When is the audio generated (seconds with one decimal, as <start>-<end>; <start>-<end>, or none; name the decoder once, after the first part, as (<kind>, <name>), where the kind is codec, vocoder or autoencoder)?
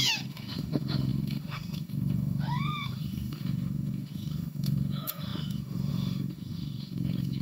0.0-7.4 (autoencoder, DAC-VAE)